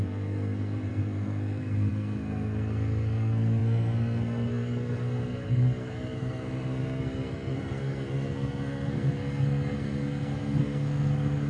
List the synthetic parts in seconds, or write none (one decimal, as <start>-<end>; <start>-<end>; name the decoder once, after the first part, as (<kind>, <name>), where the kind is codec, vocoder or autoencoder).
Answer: 0.0-11.5 (codec, SNAC)